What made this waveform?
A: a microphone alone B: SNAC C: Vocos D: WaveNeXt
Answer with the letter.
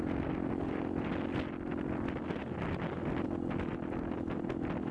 A